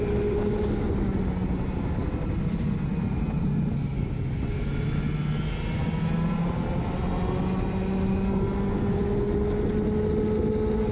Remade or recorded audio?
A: recorded